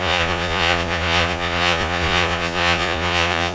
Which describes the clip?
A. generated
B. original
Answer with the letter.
A